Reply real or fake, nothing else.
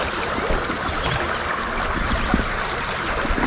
real